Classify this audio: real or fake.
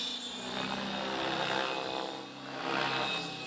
real